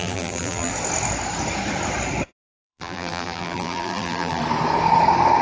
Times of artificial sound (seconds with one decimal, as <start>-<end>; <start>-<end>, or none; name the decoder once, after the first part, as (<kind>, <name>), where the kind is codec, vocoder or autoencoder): 0.0-0.7 (vocoder, BigVGAN v2); 2.5-4.4